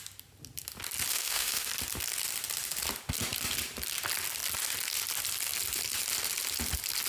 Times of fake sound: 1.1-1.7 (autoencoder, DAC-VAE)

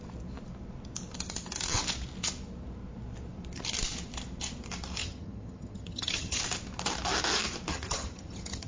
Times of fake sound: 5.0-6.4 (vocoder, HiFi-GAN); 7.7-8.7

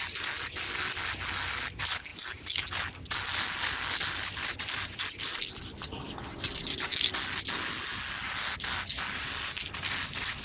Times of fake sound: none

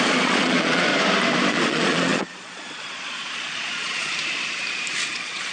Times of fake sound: 0.0-0.9 (vocoder, Vocos); 1.5-4.1; 5.1-5.5

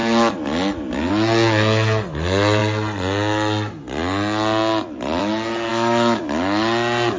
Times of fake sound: 5.7-6.2 (autoencoder, DAC-VAE)